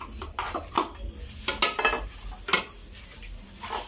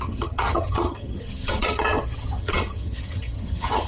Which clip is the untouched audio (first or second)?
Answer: first